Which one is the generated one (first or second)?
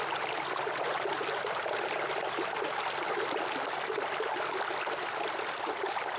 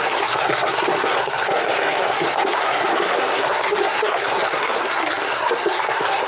second